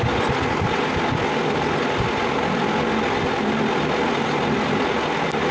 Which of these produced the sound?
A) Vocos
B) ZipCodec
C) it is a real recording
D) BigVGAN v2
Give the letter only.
C